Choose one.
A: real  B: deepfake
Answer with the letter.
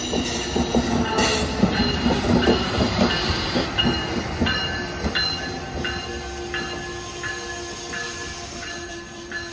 A